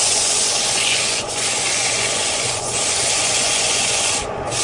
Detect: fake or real fake